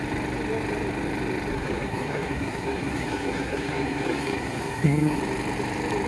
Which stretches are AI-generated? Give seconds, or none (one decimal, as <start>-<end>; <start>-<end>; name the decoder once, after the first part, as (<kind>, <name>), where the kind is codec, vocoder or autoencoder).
1.5-5.2 (codec, SNAC)